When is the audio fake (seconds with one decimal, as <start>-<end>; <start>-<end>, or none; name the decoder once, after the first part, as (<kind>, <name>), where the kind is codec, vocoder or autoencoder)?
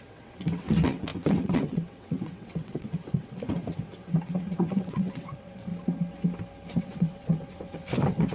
0.0-5.7 (vocoder, WaveNeXt); 6.8-8.3